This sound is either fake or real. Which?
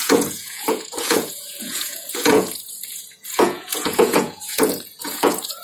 fake